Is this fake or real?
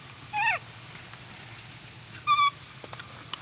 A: real